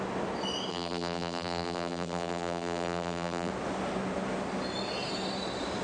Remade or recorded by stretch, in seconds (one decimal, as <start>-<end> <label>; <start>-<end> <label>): 0.0-0.7 recorded; 0.7-3.5 remade; 3.5-5.8 recorded